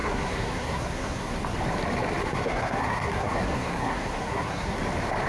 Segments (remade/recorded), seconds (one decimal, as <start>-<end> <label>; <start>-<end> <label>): 0.0-1.4 remade; 1.4-2.2 recorded; 2.2-4.8 remade; 4.8-5.3 recorded